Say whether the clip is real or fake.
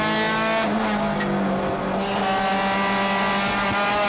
real